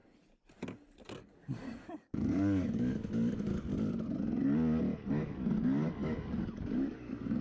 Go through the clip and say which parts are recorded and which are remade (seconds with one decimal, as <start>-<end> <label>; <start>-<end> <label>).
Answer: 0.0-1.1 recorded; 1.1-3.7 remade; 3.7-4.8 recorded; 4.8-7.4 remade